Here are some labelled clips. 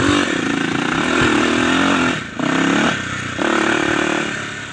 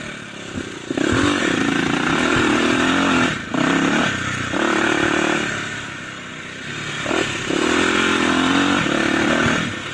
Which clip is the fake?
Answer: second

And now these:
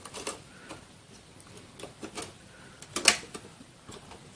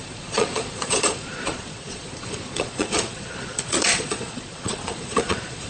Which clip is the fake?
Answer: second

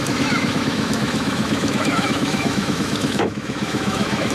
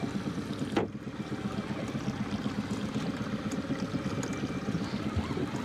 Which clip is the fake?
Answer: first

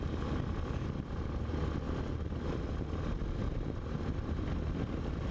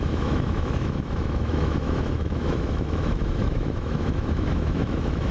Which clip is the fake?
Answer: second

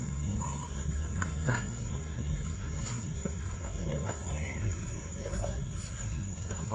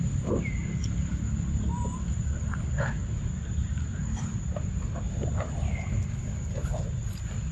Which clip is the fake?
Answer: first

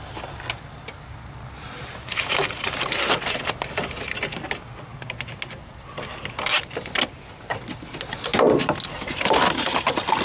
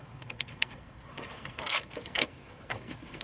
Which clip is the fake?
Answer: second